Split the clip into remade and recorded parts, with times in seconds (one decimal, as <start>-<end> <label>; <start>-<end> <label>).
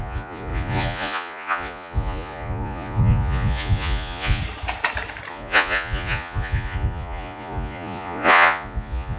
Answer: 0.0-4.4 remade; 4.4-5.3 recorded; 5.3-9.2 remade